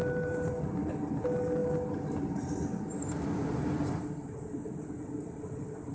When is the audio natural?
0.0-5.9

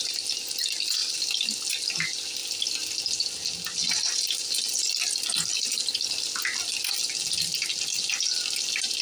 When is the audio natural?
0.0-9.0

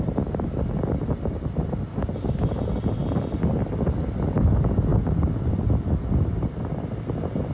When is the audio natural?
0.0-7.5